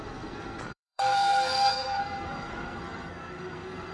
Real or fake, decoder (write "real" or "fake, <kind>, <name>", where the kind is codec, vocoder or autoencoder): fake, codec, SNAC